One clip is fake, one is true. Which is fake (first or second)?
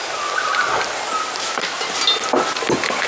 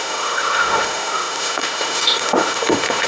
second